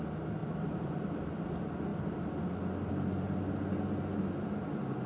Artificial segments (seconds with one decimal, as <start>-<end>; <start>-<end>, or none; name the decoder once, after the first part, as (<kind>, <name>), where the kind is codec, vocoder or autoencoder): 0.4-1.2 (vocoder, BigVGAN v2)